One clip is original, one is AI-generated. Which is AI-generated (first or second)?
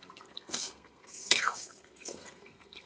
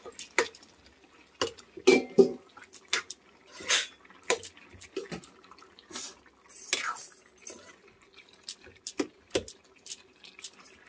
first